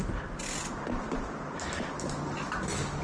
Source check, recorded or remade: recorded